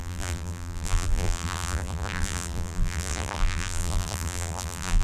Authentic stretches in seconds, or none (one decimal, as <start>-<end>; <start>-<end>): none